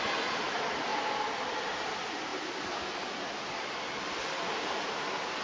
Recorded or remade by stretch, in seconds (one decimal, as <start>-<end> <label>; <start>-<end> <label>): 0.0-5.4 recorded

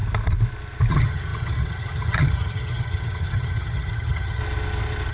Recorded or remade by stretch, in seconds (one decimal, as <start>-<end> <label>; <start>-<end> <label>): 0.0-0.9 recorded; 0.9-4.4 remade; 4.4-5.1 recorded

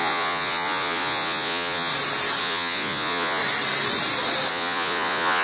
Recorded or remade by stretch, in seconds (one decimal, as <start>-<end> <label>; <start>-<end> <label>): 0.0-1.9 remade; 1.9-2.4 recorded; 2.4-3.4 remade; 3.4-4.5 recorded; 4.5-5.4 remade

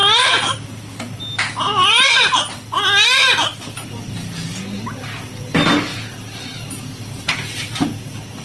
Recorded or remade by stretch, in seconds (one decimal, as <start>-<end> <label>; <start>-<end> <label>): 0.0-5.9 recorded; 5.9-8.0 remade; 8.0-8.4 recorded

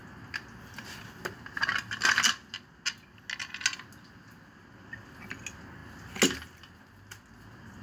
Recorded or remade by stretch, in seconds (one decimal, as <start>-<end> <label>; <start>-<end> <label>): 0.0-7.8 recorded